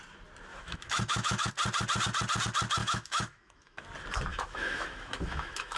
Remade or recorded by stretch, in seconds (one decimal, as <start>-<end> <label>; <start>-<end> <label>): 0.0-0.5 recorded; 0.5-1.5 remade; 1.5-2.8 recorded; 2.8-3.8 remade; 3.8-4.3 recorded; 4.3-5.8 remade